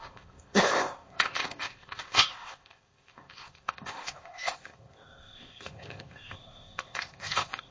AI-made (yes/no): yes